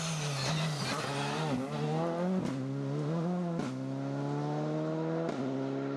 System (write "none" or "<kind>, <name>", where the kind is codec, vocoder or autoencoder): none